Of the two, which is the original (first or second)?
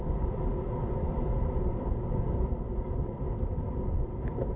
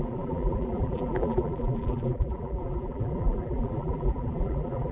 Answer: first